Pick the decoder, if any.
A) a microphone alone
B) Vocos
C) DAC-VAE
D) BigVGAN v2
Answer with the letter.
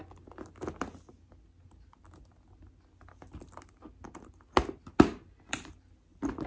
A